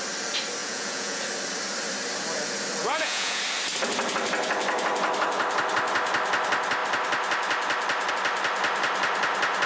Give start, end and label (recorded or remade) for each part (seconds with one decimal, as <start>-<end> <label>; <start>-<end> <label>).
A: 0.0-0.6 recorded; 0.6-1.2 remade; 1.2-2.8 recorded; 2.8-3.4 remade; 3.4-9.7 recorded